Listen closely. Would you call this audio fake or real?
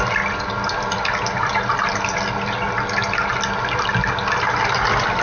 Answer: real